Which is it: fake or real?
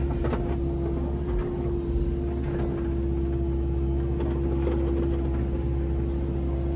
real